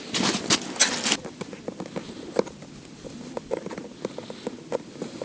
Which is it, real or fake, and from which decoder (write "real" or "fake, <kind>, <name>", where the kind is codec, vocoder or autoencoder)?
real